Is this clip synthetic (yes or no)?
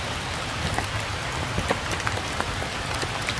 no